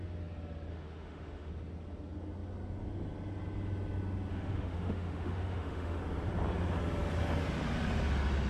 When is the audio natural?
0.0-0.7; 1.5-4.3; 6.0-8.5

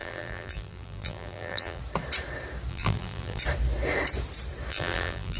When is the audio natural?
1.8-2.7; 3.4-4.7

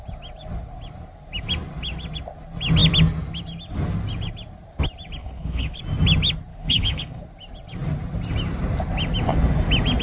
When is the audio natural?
0.0-5.2; 5.8-6.5; 7.2-10.0